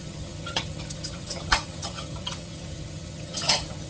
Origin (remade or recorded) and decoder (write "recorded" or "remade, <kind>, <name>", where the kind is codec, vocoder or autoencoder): remade, vocoder, HiFi-GAN